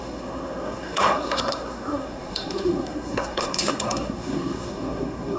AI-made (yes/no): yes